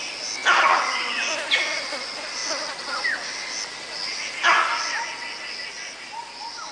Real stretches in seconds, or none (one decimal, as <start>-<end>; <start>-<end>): 0.0-6.7

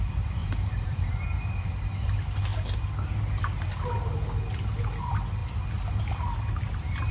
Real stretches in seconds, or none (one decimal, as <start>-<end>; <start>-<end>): 0.0-0.4; 1.7-7.1

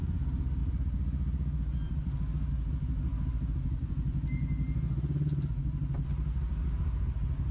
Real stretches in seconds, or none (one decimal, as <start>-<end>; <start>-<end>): 0.0-7.5